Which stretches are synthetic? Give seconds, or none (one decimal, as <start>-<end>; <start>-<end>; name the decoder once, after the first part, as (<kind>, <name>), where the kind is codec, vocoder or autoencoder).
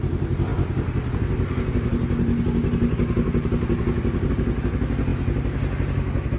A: none